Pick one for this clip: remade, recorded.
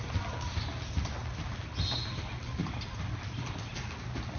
recorded